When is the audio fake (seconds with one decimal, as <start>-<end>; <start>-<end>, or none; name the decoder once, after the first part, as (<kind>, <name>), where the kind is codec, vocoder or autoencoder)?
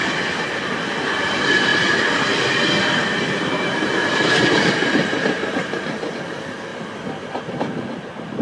1.2-1.7 (vocoder, BigVGAN v2); 2.8-6.7; 7.4-8.4